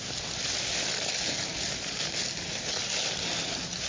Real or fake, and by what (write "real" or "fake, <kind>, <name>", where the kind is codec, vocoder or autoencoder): real